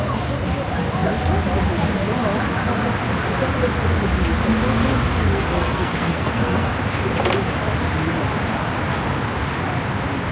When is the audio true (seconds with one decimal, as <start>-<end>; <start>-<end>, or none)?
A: 0.0-5.2; 6.7-10.3